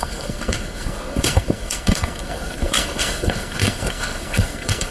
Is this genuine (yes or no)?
no